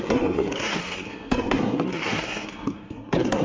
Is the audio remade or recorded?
remade